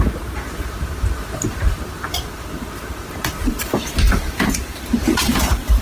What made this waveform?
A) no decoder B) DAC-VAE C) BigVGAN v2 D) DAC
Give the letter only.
C